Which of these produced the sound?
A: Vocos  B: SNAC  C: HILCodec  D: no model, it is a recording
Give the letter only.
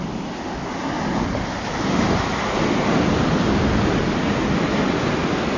D